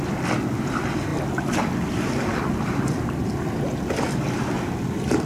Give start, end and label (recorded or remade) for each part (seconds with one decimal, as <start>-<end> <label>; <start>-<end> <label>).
0.0-5.3 recorded